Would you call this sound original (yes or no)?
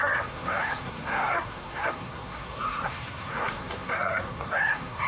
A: no